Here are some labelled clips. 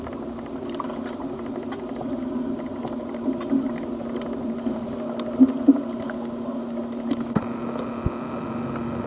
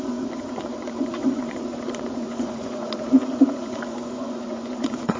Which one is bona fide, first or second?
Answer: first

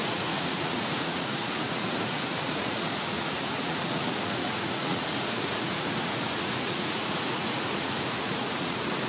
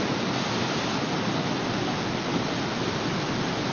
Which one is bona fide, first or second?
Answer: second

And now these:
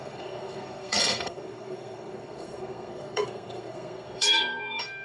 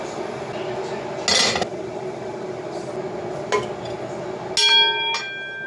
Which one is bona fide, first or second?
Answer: second